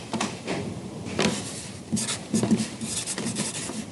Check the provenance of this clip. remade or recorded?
remade